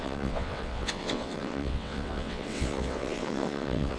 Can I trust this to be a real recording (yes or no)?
no